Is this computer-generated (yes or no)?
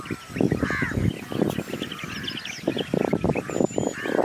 no